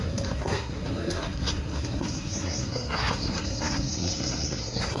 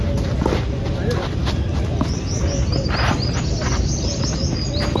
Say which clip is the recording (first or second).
second